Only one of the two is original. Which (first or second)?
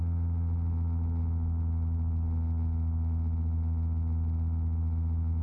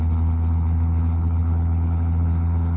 first